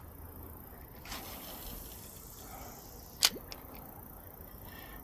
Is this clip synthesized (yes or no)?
no